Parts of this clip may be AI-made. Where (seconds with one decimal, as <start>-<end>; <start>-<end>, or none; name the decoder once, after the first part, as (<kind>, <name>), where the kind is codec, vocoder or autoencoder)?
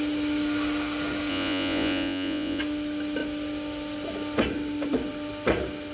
1.3-2.6 (vocoder, Vocos)